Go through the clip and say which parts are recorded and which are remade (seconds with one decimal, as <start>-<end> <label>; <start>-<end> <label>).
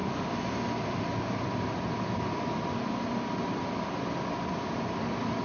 0.0-5.4 remade